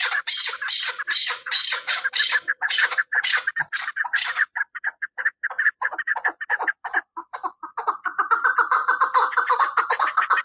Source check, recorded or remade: remade